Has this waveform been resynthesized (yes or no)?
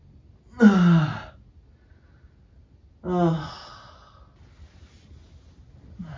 no